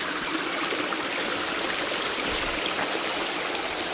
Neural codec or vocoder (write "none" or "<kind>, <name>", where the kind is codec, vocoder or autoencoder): none